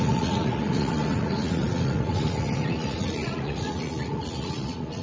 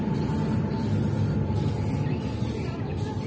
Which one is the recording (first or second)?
second